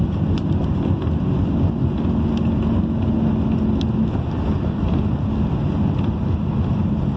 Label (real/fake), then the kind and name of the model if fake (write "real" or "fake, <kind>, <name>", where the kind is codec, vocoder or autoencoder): real